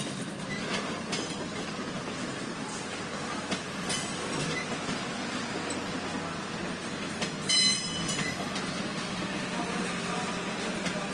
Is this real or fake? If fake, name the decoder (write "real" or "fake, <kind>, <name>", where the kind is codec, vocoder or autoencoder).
real